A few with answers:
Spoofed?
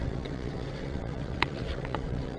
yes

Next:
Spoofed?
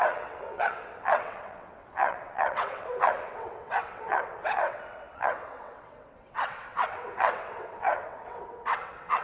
yes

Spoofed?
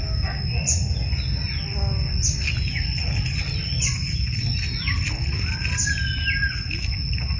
no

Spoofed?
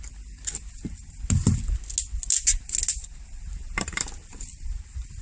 no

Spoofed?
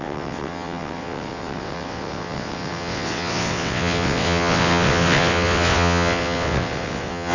yes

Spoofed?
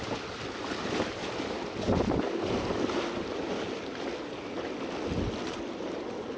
no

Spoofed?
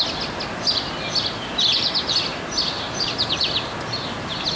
no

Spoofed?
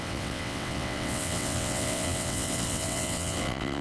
yes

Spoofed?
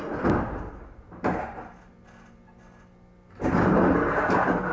no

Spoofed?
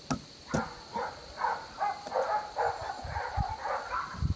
no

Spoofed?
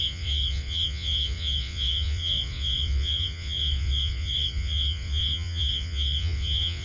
yes